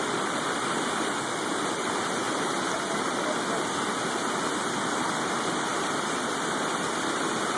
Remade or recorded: remade